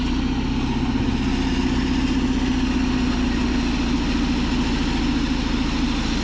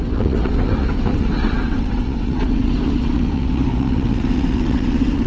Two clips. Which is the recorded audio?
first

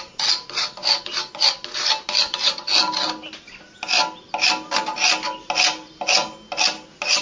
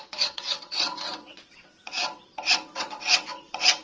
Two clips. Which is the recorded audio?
first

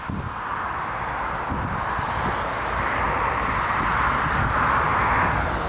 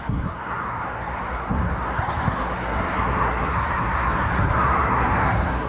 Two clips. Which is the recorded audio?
first